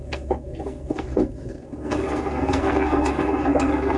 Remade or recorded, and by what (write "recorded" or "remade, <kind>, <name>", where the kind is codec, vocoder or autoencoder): remade, codec, SNAC